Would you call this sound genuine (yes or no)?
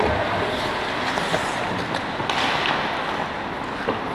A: yes